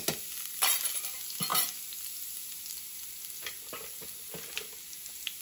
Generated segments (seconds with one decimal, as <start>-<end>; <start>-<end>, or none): none

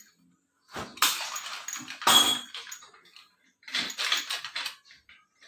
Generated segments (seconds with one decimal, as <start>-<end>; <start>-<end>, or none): none

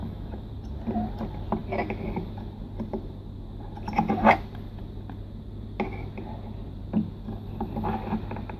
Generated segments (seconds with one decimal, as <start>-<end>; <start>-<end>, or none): 0.0-0.5

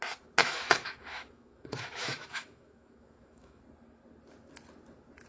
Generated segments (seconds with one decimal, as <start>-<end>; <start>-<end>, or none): 0.4-3.6

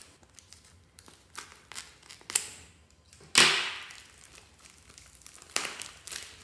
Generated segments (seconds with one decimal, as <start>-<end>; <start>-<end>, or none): none